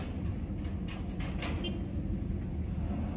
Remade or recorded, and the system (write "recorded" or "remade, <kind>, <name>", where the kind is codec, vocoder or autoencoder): recorded